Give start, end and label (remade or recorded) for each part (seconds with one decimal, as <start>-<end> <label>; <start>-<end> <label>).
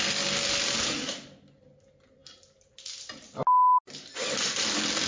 0.0-5.1 recorded